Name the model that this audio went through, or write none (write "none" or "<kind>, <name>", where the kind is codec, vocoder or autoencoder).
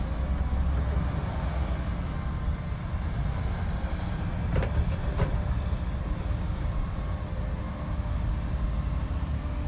none